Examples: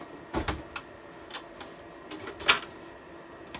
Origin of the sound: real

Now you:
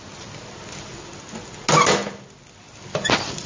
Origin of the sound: real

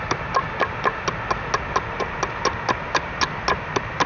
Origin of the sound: real